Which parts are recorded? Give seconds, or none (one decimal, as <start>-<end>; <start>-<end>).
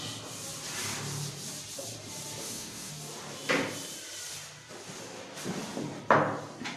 0.0-2.4; 2.9-6.8